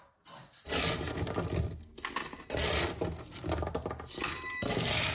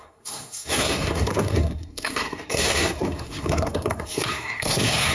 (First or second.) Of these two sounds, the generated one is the second